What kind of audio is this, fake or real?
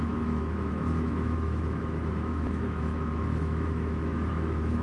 fake